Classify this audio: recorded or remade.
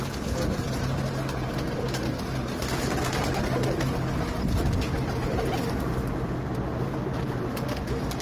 recorded